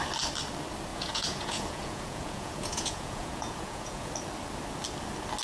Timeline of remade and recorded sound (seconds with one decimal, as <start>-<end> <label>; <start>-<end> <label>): 0.0-0.9 recorded; 0.9-4.1 remade; 4.1-5.4 recorded